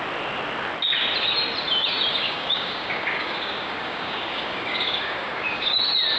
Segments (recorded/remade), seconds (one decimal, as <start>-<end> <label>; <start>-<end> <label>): 0.0-2.1 recorded; 2.1-5.8 remade; 5.8-6.2 recorded